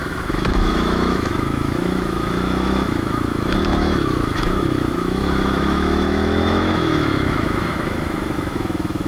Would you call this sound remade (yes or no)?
yes